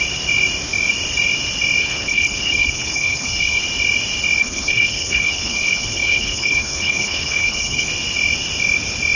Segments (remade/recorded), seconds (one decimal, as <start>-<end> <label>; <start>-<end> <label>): 0.0-1.8 recorded; 1.8-3.6 remade; 3.6-4.4 recorded; 4.4-7.9 remade; 7.9-9.2 recorded